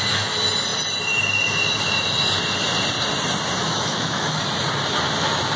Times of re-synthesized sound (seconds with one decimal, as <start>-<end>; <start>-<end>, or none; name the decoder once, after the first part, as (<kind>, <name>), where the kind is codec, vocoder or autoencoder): 3.6-4.4 (autoencoder, DAC-VAE)